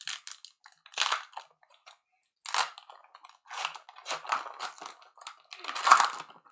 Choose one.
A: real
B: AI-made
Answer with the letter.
A